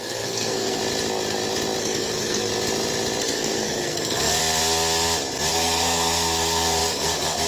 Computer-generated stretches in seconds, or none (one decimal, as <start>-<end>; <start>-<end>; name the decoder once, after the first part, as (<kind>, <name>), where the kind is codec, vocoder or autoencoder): 0.0-0.8 (codec, SNAC); 1.8-2.5; 3.2-4.4; 5.5-7.5